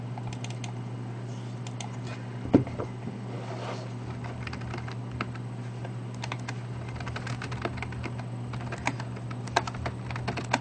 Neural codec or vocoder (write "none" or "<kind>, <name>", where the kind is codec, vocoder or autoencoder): none